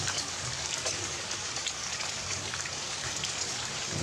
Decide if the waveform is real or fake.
fake